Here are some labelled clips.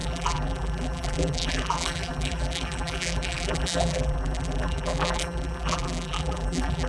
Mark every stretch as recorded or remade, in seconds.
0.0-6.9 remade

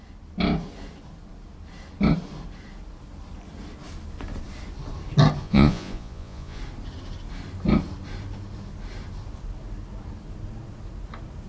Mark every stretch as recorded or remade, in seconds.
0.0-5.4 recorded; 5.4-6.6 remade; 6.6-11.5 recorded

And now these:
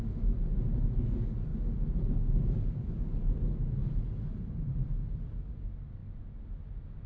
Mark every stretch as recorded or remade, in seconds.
0.0-7.1 recorded